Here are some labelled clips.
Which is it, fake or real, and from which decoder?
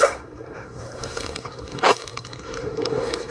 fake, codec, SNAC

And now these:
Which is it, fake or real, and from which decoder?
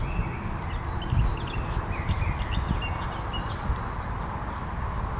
real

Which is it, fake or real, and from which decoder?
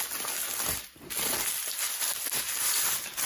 real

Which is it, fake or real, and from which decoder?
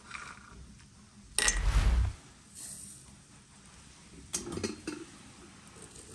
real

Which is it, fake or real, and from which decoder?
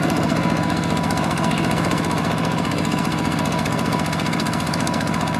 fake, codec, SNAC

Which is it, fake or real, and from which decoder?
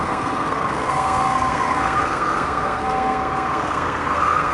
fake, codec, SNAC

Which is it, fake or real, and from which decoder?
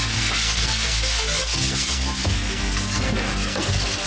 fake, codec, SNAC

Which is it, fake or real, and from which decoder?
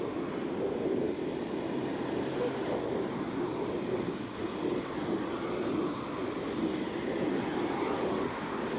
real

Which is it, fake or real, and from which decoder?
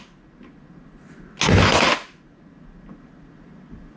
real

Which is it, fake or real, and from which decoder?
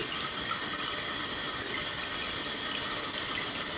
real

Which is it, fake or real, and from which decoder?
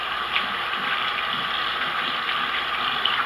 real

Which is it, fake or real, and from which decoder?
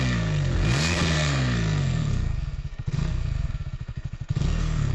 fake, codec, SNAC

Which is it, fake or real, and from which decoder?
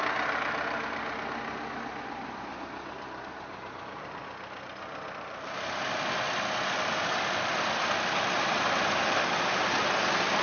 real